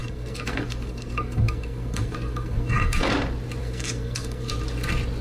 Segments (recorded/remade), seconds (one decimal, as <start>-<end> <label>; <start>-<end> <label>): 0.0-3.1 remade; 3.1-3.6 recorded; 3.6-4.5 remade; 4.5-5.2 recorded